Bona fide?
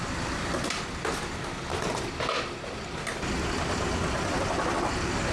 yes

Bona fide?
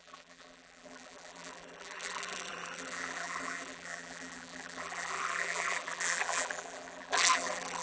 no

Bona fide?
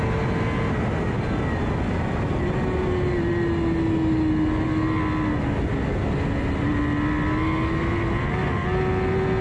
yes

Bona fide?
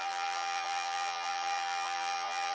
no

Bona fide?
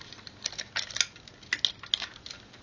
yes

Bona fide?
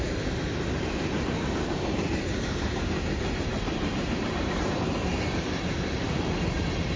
no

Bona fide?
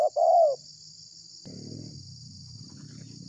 yes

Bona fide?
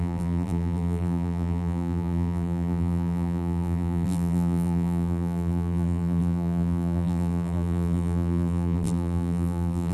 no